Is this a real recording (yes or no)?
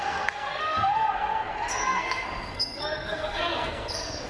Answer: no